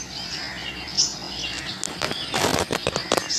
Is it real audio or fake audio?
real